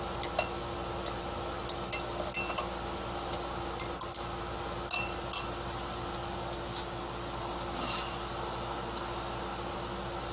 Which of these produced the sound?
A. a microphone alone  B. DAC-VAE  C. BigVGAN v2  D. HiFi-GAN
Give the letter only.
A